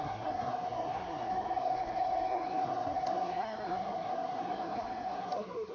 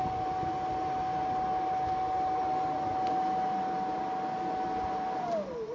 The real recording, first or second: second